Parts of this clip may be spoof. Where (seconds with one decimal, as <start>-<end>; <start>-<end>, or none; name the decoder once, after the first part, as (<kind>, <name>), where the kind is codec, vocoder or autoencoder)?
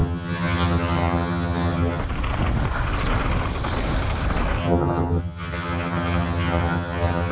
0.0-2.0 (vocoder, HiFi-GAN); 4.6-7.3